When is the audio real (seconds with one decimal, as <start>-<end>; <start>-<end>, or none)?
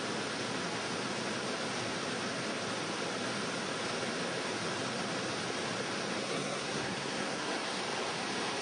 0.0-6.2; 7.8-8.6